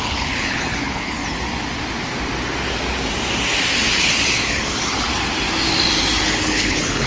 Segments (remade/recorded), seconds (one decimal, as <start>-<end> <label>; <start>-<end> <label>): 0.0-1.2 remade; 1.2-3.9 recorded; 3.9-5.1 remade; 5.1-6.2 recorded; 6.2-7.1 remade